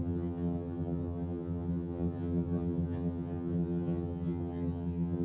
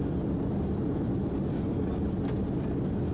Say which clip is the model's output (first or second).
first